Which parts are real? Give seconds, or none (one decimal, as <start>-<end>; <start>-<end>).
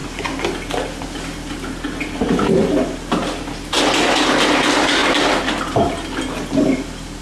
0.0-7.2